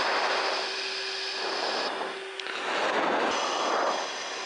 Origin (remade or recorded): recorded